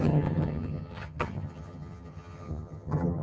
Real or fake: fake